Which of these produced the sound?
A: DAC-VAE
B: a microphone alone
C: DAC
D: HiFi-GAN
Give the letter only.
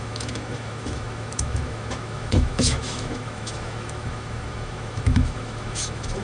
A